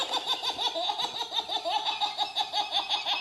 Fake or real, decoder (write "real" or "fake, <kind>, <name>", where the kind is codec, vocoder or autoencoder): real